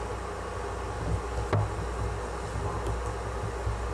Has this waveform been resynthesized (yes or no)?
no